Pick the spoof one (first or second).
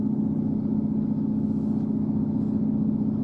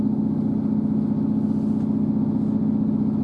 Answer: first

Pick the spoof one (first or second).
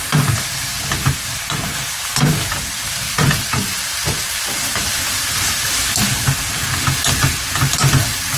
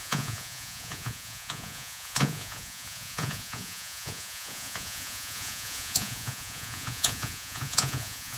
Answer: second